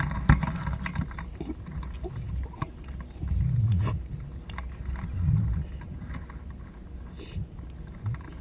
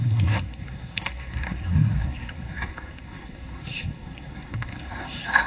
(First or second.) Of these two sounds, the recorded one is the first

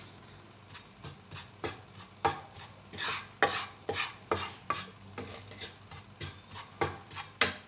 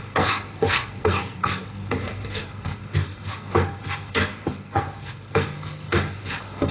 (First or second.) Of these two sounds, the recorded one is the first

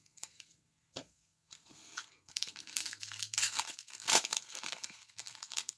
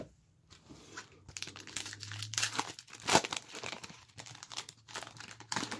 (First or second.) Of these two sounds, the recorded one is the second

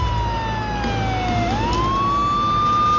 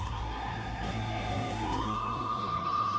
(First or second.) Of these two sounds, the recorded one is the first